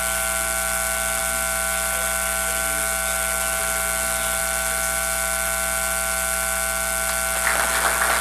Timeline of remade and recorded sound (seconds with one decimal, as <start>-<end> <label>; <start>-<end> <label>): 0.0-8.2 recorded